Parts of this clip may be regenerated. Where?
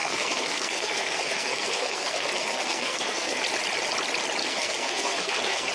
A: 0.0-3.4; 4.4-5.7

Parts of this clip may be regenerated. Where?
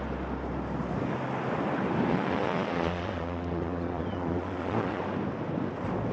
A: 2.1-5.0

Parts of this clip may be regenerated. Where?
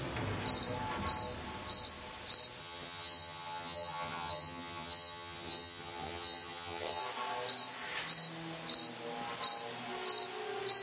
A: 2.6-7.0